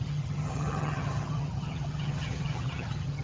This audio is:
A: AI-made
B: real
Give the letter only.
A